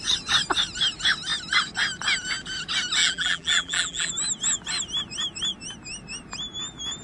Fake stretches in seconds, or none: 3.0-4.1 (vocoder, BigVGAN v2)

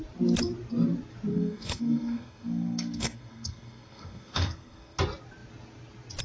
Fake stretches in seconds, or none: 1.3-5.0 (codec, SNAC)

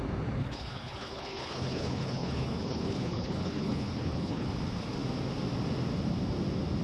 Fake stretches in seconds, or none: 0.4-4.5 (codec, HILCodec)

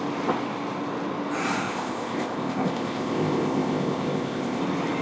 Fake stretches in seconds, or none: 1.6-4.6 (codec, ZipCodec)

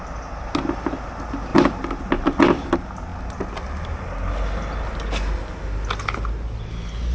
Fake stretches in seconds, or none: none

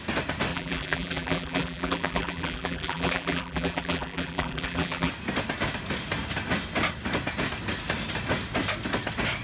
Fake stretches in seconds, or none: 0.5-5.1 (vocoder, BigVGAN v2)

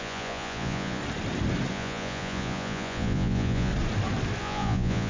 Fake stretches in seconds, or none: 0.0-1.0 (vocoder, Vocos); 1.7-3.7; 4.4-5.1